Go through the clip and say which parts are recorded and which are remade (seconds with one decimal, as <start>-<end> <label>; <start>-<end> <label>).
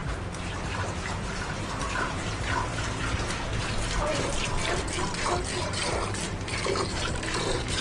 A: 0.0-0.7 recorded; 0.7-2.7 remade; 2.7-5.6 recorded; 5.6-7.8 remade